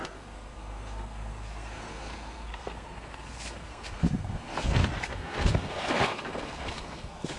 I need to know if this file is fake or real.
fake